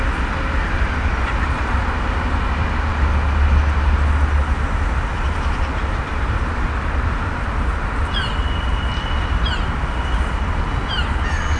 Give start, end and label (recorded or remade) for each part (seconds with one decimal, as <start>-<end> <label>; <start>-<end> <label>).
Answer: 0.0-11.6 recorded

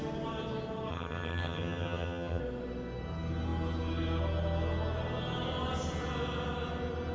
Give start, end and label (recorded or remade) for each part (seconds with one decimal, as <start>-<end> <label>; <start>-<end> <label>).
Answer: 0.0-0.9 recorded; 0.9-2.4 remade; 2.4-7.1 recorded

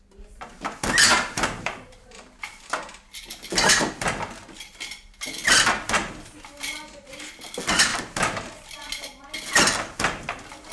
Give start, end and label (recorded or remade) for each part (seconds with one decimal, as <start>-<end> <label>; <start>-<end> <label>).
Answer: 0.0-1.1 recorded; 1.1-2.6 remade; 2.6-7.9 recorded; 7.9-8.5 remade; 8.5-10.7 recorded

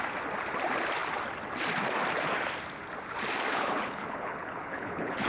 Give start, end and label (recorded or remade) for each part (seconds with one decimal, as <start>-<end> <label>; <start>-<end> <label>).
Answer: 0.0-3.5 recorded; 3.5-5.3 remade

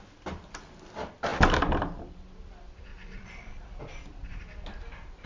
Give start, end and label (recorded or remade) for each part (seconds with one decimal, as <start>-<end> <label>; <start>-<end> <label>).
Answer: 0.0-2.9 recorded; 2.9-3.8 remade; 3.8-5.3 recorded

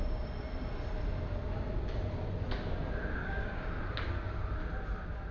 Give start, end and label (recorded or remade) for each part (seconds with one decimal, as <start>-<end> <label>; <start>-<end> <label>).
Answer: 0.0-3.2 recorded; 3.2-3.8 remade; 3.8-5.3 recorded

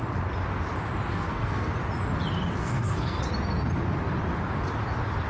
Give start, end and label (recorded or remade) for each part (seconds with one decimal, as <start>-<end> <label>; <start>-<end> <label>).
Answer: 0.0-1.1 recorded; 1.1-1.7 remade; 1.7-2.6 recorded; 2.6-3.2 remade; 3.2-5.3 recorded

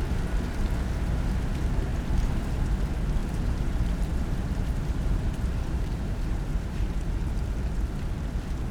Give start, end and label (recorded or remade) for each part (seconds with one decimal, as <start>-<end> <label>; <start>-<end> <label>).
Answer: 0.0-1.9 recorded; 1.9-2.6 remade; 2.6-3.2 recorded; 3.2-7.4 remade; 7.4-8.7 recorded